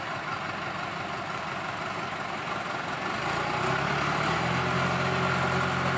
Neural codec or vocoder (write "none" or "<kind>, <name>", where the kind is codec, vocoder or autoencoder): none